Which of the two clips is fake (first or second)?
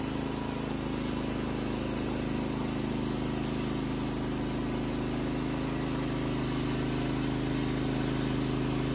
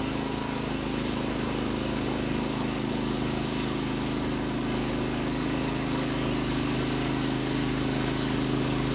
second